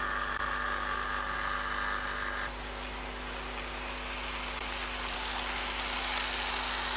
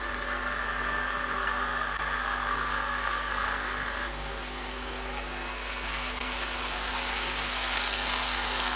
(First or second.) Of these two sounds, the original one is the first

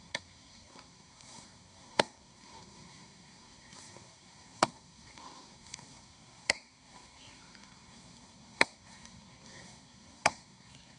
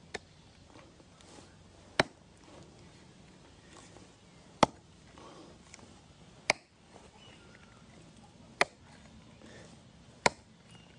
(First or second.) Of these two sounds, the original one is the second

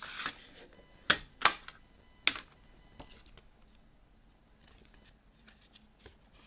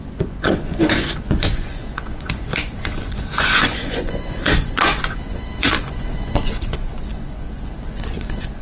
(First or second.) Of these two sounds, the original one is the first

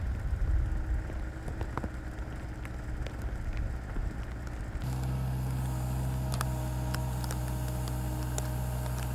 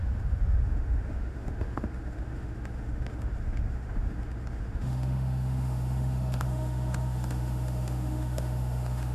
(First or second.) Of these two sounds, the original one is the first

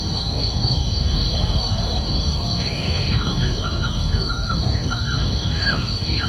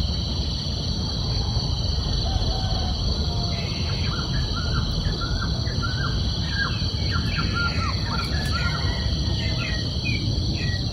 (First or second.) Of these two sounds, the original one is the second